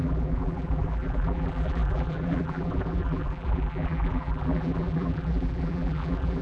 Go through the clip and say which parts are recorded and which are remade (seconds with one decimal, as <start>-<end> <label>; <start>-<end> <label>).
0.0-6.4 remade